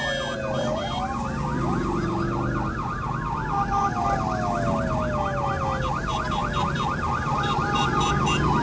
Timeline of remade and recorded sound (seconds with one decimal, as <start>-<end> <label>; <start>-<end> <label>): 0.0-8.6 recorded